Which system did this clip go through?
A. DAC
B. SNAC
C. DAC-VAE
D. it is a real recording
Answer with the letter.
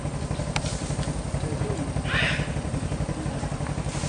D